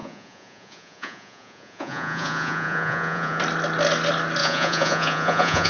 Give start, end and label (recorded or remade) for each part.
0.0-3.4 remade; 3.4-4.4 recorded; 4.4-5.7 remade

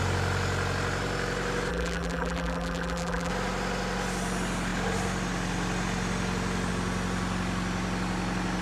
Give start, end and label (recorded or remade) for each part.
0.0-1.7 recorded; 1.7-3.3 remade; 3.3-8.6 recorded

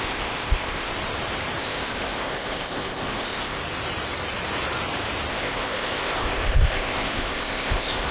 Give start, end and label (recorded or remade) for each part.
0.0-0.9 remade; 0.9-1.6 recorded; 1.6-3.6 remade; 3.6-5.3 recorded; 5.3-8.1 remade

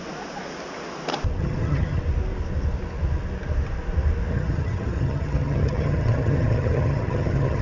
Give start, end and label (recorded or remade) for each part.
0.0-1.4 recorded; 1.4-2.0 remade; 2.0-4.3 recorded; 4.3-7.6 remade

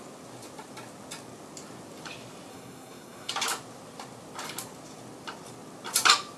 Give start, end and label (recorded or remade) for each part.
0.0-2.5 recorded; 2.5-3.3 remade; 3.3-6.4 recorded